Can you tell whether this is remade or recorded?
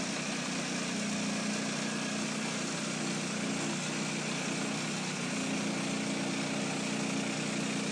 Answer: recorded